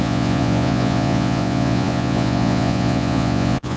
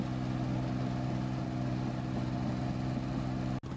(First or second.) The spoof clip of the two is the first